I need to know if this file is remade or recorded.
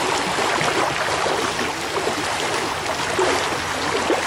recorded